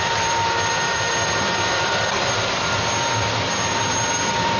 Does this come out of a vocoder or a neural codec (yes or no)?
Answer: yes